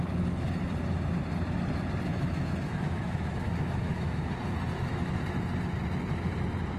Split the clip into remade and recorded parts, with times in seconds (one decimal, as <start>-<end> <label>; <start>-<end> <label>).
0.0-2.1 recorded; 2.1-4.3 remade; 4.3-4.7 recorded; 4.7-5.2 remade; 5.2-6.8 recorded